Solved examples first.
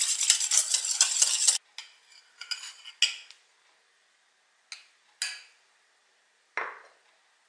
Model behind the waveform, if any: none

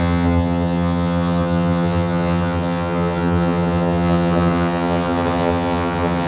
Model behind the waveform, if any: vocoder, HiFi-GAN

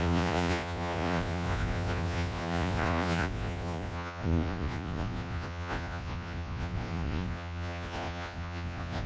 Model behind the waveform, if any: vocoder, Vocos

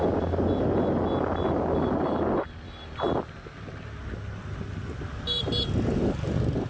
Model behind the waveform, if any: none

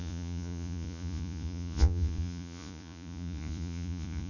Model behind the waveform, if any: vocoder, Vocos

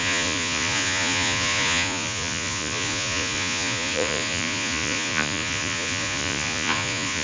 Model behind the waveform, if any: vocoder, Vocos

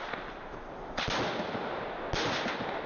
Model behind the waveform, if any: none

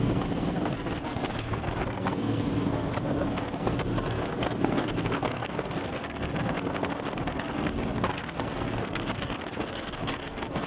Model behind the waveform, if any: codec, SNAC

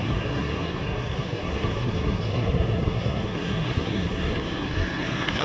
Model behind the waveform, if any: codec, SNAC